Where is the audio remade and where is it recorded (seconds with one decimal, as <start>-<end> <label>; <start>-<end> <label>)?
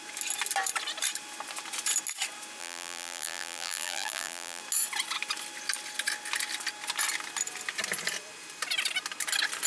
0.0-2.6 recorded; 2.6-4.6 remade; 4.6-9.7 recorded